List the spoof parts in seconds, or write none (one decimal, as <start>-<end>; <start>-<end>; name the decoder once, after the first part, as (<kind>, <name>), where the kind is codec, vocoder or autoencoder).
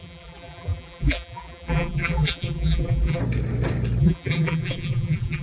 0.0-3.2 (vocoder, BigVGAN v2); 4.0-5.4